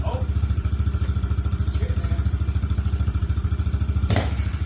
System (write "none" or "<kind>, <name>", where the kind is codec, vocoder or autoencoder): vocoder, BigVGAN v2